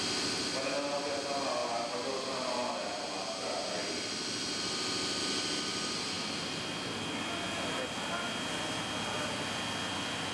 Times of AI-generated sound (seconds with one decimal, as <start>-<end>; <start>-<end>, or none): 5.7-7.0